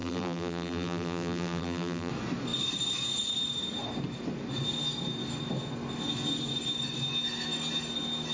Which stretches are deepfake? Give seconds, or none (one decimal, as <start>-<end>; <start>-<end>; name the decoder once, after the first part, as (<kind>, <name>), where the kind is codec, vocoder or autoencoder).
0.0-2.1 (vocoder, BigVGAN v2)